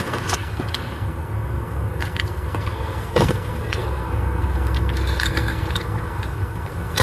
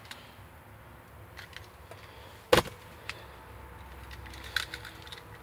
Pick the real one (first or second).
second